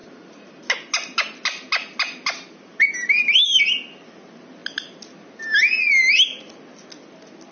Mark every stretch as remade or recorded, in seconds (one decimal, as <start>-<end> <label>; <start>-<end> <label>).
0.0-7.5 recorded